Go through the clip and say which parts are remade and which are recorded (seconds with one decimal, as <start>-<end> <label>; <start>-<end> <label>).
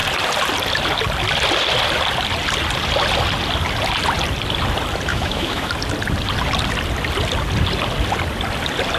0.0-5.1 recorded; 5.1-5.7 remade; 5.7-9.0 recorded